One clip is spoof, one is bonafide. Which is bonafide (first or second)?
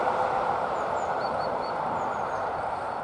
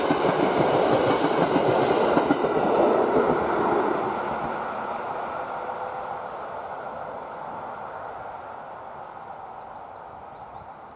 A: second